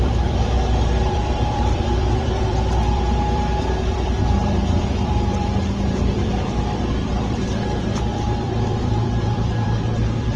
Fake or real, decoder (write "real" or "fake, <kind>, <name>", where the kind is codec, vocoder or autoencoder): fake, vocoder, BigVGAN v2